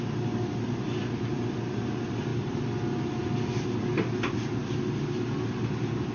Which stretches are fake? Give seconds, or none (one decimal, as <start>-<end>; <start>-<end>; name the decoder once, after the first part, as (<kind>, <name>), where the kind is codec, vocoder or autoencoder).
none